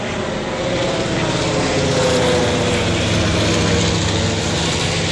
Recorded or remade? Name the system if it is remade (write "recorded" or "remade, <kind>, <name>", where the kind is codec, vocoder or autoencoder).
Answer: recorded